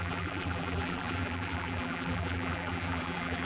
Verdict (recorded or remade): remade